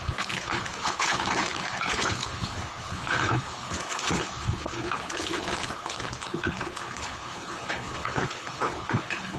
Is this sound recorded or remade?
remade